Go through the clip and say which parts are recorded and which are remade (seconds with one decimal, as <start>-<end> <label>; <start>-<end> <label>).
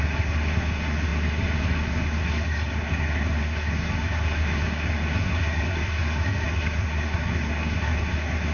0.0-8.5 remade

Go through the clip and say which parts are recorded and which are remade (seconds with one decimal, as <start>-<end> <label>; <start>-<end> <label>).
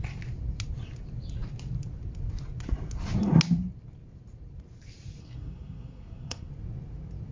0.0-5.2 recorded; 5.2-6.5 remade; 6.5-7.3 recorded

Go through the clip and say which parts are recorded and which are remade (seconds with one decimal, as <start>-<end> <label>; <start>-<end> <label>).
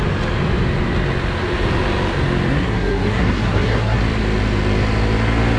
0.0-2.5 recorded; 2.5-4.0 remade; 4.0-5.6 recorded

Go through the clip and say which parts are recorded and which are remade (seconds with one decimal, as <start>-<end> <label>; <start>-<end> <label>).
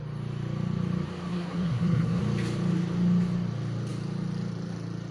0.0-1.3 recorded; 1.3-2.2 remade; 2.2-5.1 recorded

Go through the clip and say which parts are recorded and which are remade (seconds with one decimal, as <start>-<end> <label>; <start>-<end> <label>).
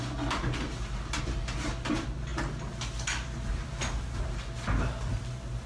0.0-5.7 recorded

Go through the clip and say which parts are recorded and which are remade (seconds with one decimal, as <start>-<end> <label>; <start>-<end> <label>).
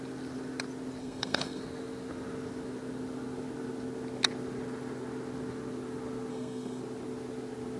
0.0-1.0 recorded; 1.0-1.6 remade; 1.6-6.3 recorded; 6.3-6.8 remade; 6.8-7.8 recorded